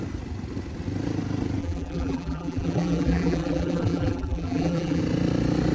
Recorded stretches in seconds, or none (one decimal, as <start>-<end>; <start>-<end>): 0.0-1.6; 5.0-5.7